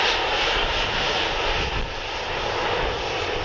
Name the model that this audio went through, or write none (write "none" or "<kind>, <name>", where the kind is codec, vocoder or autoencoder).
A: none